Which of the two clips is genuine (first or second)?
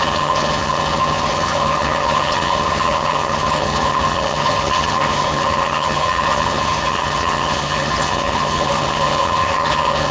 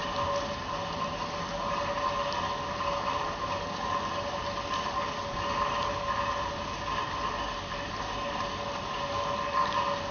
second